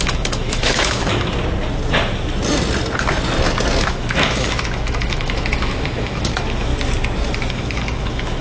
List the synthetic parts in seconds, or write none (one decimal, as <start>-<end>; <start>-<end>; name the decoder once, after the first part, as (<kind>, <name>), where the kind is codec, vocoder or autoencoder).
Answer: 0.0-1.3 (autoencoder, DAC-VAE); 3.8-6.7; 7.5-8.4